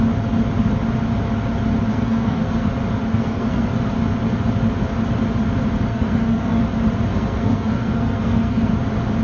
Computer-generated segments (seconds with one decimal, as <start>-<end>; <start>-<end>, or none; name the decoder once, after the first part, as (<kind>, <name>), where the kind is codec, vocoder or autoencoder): 1.9-2.7 (codec, SNAC); 3.1-3.7; 5.9-6.6; 7.1-8.7